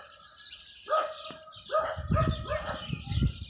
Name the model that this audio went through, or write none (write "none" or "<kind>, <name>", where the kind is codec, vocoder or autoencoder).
none